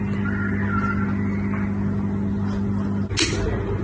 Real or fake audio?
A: real